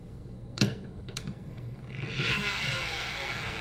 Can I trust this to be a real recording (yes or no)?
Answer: no